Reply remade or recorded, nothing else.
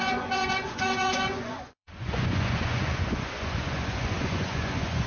remade